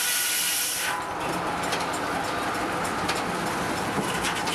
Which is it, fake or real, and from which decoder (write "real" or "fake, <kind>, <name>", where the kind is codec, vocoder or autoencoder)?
real